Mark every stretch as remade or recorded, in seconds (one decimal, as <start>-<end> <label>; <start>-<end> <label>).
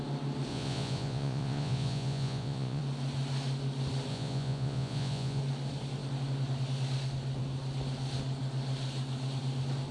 0.0-0.5 recorded; 0.5-2.8 remade; 2.8-4.1 recorded; 4.1-5.4 remade; 5.4-9.9 recorded